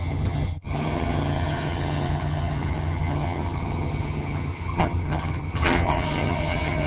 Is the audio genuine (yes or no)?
no